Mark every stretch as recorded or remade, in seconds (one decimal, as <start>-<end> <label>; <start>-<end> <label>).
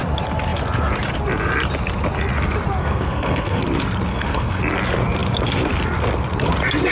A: 0.0-2.8 recorded; 2.8-3.6 remade; 3.6-4.1 recorded; 4.1-4.6 remade; 4.6-6.9 recorded